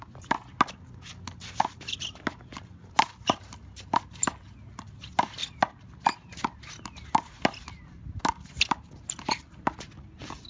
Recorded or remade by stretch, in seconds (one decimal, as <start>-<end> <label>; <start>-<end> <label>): 0.0-10.5 recorded